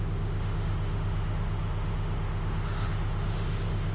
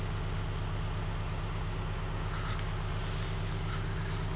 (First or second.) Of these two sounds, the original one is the second